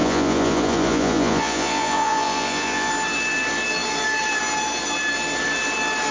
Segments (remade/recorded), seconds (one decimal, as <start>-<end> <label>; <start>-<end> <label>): 0.0-2.9 remade; 2.9-6.1 recorded